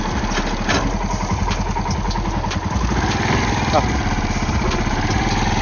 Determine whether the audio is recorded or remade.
recorded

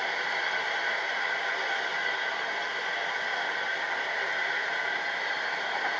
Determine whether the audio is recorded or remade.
recorded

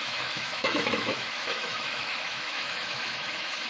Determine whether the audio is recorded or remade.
remade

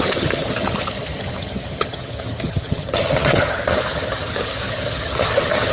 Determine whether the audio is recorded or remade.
remade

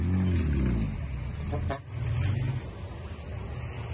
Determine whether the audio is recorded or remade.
recorded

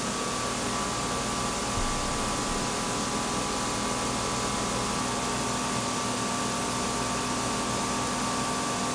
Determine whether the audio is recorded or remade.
recorded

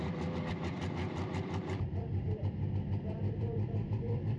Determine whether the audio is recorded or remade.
remade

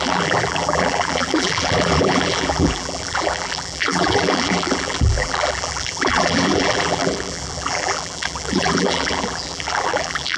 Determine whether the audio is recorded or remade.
remade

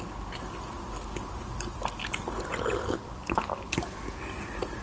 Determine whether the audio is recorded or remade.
recorded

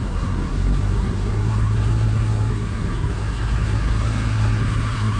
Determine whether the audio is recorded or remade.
remade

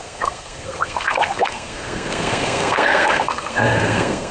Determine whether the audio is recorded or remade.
remade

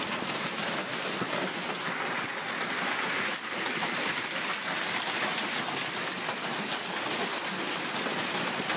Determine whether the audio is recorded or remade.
recorded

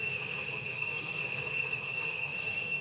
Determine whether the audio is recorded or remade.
remade